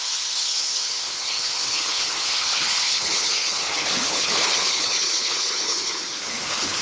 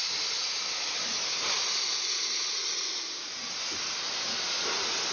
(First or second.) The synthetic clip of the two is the first